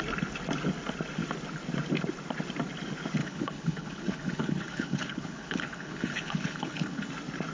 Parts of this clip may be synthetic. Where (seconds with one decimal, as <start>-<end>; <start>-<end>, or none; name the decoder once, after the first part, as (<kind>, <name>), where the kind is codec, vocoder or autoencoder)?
3.2-7.1 (codec, HILCodec)